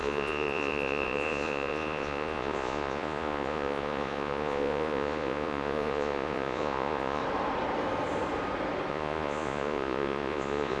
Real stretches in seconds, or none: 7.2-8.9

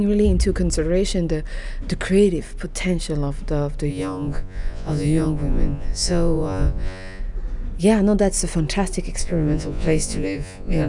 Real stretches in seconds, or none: 0.0-3.9; 7.2-9.2